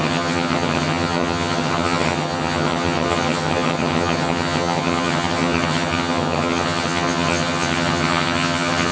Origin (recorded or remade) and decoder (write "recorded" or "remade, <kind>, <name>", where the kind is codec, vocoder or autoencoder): remade, vocoder, HiFi-GAN